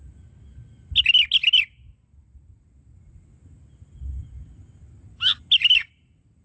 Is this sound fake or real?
real